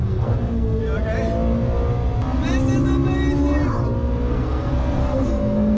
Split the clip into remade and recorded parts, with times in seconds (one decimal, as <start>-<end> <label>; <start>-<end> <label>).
0.0-0.8 remade; 0.8-4.3 recorded; 4.3-5.8 remade